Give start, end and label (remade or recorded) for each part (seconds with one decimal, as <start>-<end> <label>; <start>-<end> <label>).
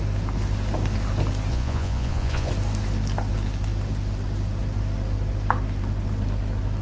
0.0-1.5 recorded; 1.5-2.5 remade; 2.5-6.8 recorded